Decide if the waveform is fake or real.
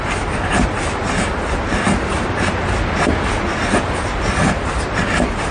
real